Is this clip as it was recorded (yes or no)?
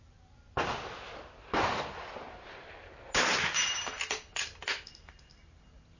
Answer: yes